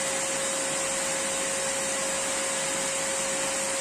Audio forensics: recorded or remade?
recorded